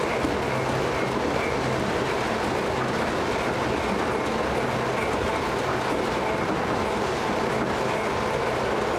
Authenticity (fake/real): real